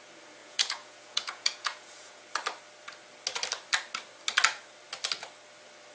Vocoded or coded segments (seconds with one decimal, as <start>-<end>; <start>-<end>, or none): 0.4-2.2